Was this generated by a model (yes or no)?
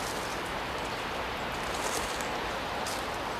no